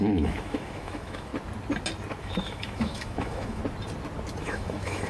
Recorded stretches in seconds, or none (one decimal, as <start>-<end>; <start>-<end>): 1.3-2.2; 3.6-4.4